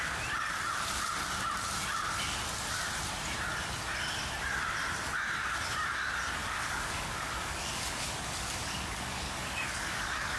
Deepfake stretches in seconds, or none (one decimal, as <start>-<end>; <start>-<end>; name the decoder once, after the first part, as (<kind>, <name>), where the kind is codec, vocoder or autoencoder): 6.4-10.4 (codec, DAC)